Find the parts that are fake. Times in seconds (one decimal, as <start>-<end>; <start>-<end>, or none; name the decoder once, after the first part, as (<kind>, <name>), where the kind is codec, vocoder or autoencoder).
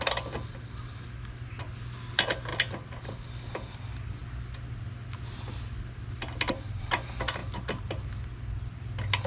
none